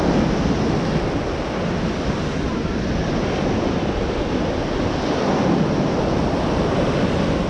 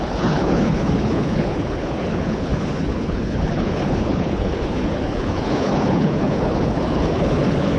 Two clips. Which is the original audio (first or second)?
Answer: first